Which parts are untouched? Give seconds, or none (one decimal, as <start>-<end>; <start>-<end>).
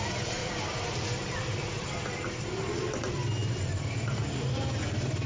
0.0-0.4; 2.1-3.4; 4.2-5.3